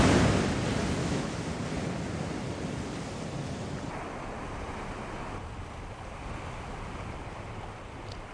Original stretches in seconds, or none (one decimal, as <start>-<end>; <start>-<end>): 0.0-1.0; 1.5-8.3